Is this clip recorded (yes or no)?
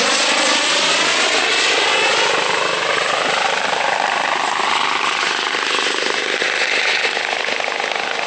yes